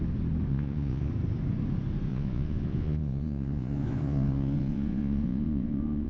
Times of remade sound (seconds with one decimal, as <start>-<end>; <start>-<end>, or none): 0.5-1.1; 2.1-6.1